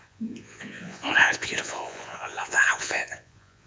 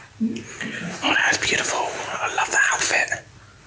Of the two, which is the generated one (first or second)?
first